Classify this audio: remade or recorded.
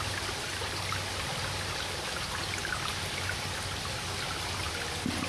recorded